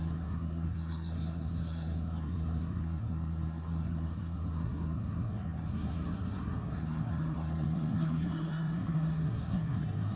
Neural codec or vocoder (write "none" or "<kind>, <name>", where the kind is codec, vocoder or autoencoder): codec, SNAC